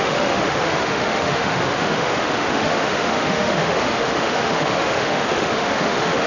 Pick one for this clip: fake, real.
fake